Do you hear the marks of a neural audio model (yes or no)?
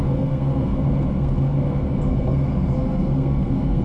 yes